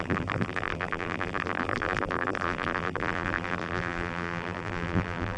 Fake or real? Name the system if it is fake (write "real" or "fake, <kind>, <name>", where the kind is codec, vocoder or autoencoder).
fake, vocoder, BigVGAN v2